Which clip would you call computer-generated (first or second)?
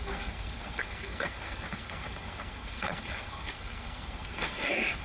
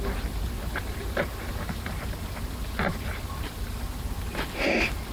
first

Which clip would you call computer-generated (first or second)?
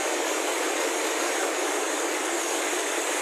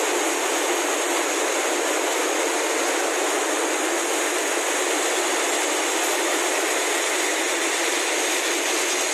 first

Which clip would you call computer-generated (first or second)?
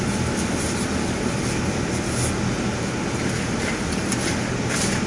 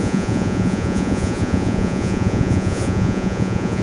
second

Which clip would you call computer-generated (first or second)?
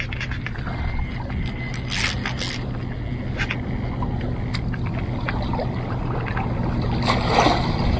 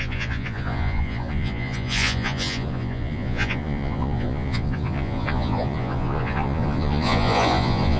second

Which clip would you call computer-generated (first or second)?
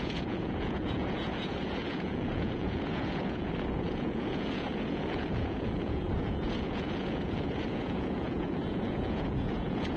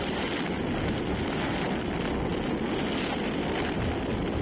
first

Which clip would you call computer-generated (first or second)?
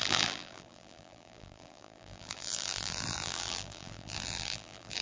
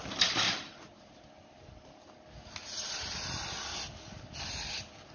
first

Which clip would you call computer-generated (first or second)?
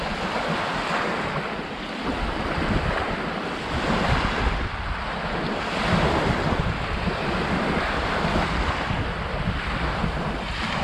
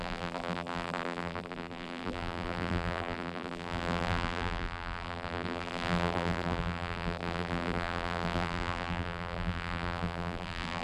second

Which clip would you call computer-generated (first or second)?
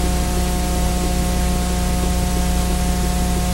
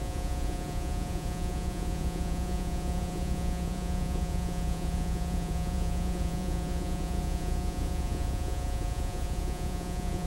second